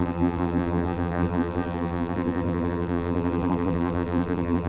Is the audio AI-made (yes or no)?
yes